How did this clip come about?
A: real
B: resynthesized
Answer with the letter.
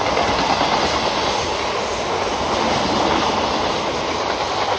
A